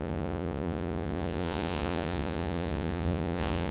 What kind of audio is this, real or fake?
fake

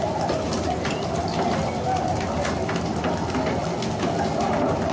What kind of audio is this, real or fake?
real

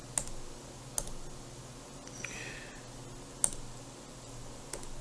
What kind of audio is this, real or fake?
real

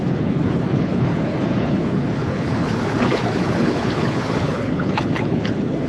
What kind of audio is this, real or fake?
fake